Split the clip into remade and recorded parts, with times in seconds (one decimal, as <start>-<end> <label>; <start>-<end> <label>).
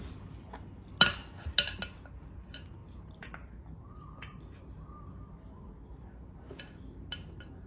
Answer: 0.0-7.7 recorded